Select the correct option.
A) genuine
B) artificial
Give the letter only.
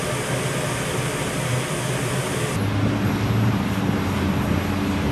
A